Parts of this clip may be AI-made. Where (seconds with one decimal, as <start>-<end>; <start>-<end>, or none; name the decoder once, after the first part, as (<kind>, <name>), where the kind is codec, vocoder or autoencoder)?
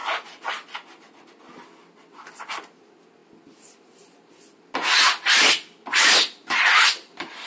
none